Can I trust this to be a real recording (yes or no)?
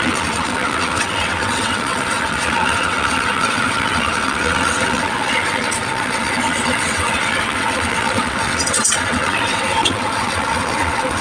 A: no